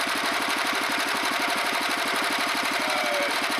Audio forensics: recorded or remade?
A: remade